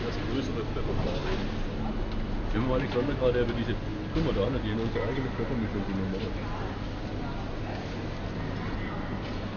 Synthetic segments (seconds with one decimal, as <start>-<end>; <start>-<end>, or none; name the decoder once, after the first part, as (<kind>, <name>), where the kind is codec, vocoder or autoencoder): none